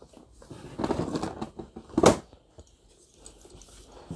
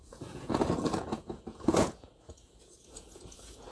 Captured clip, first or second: first